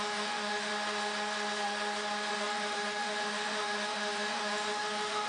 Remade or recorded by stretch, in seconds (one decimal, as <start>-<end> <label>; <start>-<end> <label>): 0.0-0.7 remade; 0.7-2.3 recorded; 2.3-5.3 remade